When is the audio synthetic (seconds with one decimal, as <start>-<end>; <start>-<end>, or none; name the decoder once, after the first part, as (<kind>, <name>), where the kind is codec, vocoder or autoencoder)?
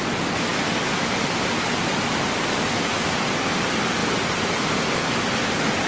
none